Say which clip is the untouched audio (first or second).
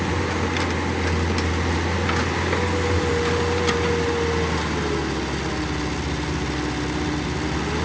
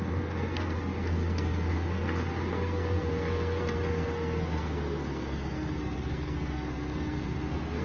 first